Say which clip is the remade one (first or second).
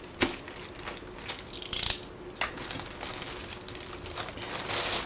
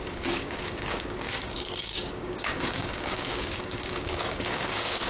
second